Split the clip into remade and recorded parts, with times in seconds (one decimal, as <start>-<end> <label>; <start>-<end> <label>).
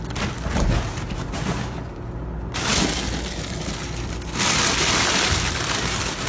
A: 0.0-6.3 recorded